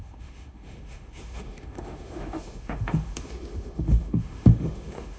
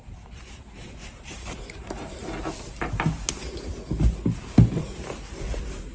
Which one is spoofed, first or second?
first